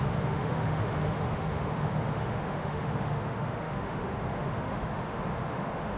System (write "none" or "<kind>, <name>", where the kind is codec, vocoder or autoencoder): autoencoder, DAC-VAE